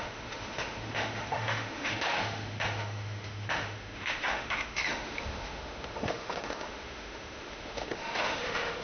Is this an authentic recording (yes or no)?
no